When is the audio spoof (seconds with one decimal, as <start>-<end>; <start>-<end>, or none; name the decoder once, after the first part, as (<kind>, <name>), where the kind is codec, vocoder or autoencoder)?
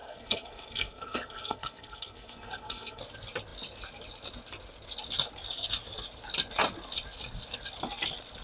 0.0-3.0 (codec, SNAC)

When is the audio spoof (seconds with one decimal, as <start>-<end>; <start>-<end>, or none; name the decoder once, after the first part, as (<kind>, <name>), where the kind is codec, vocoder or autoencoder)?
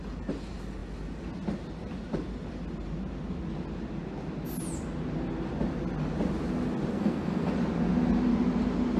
6.9-7.5 (codec, SNAC)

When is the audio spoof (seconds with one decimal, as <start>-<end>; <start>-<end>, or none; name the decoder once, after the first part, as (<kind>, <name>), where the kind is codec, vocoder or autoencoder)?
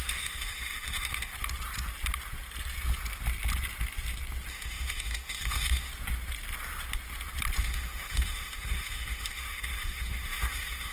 0.0-1.3 (autoencoder, DAC-VAE); 4.5-5.9; 7.6-10.9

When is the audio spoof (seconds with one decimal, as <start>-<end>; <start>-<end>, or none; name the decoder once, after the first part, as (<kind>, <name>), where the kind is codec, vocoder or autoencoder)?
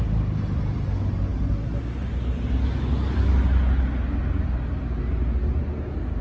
none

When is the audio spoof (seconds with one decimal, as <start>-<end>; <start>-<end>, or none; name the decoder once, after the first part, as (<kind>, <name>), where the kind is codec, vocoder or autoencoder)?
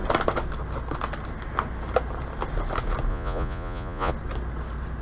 3.1-4.1 (vocoder, Vocos)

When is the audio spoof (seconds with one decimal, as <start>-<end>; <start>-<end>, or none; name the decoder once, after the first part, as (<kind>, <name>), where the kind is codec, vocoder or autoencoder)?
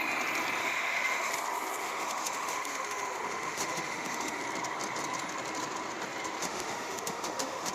0.6-1.3 (autoencoder, DAC-VAE); 1.8-4.4; 6.4-7.7